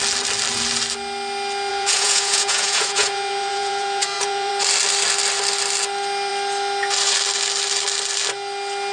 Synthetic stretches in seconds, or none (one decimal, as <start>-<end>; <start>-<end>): 1.7-4.5